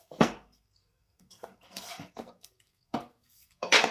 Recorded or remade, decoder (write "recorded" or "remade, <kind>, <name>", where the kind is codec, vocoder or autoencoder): remade, codec, SNAC